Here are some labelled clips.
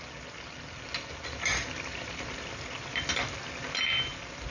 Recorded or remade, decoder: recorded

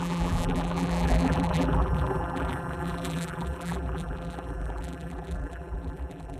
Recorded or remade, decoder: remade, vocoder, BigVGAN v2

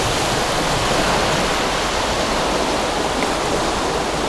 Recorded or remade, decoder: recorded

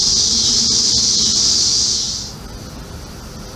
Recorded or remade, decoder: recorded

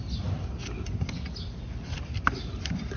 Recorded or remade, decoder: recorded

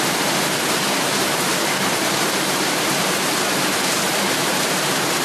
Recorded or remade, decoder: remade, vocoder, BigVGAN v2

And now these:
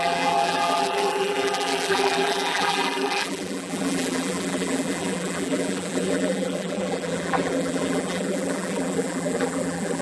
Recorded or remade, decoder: remade, vocoder, BigVGAN v2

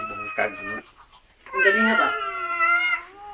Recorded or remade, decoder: recorded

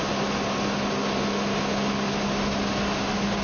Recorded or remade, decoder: recorded